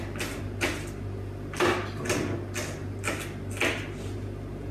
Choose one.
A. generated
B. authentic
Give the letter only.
B